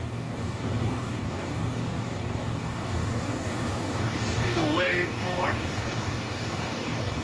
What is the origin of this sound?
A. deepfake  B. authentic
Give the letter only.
A